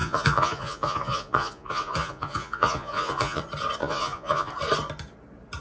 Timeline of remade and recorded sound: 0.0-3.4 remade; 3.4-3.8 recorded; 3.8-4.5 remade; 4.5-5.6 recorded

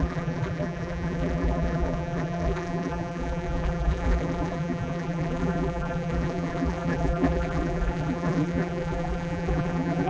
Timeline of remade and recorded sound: 0.0-10.1 remade

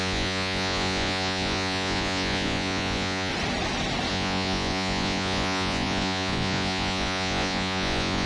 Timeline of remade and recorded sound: 0.0-3.3 remade; 3.3-4.1 recorded; 4.1-8.3 remade